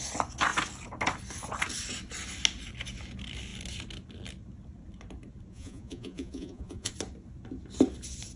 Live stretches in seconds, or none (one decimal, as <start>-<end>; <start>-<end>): 0.0-5.5; 6.9-8.4